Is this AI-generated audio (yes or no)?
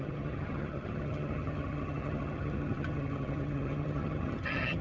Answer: yes